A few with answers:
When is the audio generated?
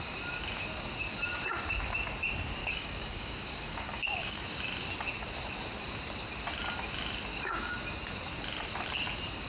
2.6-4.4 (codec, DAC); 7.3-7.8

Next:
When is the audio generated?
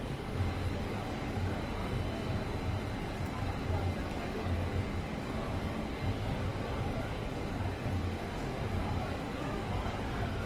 0.0-1.8 (codec, DAC); 3.0-6.5; 7.0-8.2; 8.7-10.5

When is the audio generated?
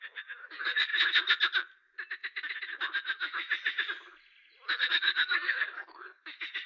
0.0-0.9 (codec, DAC); 4.9-6.7